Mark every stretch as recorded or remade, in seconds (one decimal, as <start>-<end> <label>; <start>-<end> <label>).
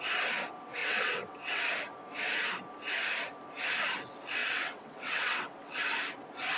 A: 0.0-0.8 recorded; 0.8-1.6 remade; 1.6-4.4 recorded; 4.4-5.8 remade; 5.8-6.6 recorded